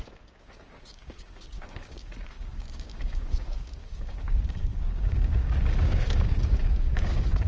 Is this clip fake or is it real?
fake